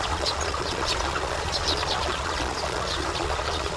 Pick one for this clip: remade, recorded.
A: remade